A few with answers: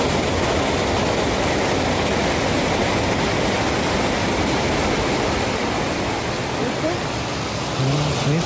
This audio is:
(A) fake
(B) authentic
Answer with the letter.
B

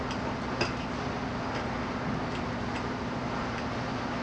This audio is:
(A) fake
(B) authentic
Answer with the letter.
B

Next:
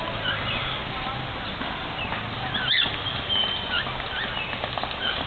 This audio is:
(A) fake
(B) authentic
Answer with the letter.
B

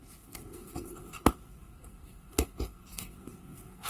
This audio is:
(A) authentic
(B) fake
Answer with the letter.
B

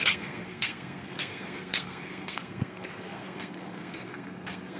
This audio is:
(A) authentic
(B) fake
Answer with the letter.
B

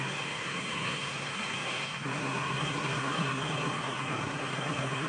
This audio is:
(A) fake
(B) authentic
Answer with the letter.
A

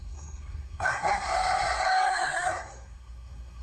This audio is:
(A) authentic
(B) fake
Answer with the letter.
B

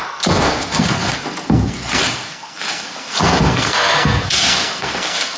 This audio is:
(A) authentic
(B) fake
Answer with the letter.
B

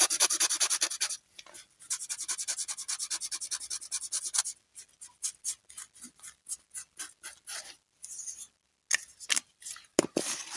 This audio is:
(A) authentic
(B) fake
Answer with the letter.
A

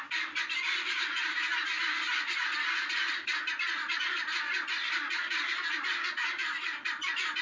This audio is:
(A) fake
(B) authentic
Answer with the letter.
B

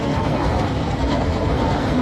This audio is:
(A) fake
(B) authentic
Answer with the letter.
A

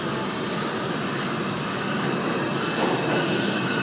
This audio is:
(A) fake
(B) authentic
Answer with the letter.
B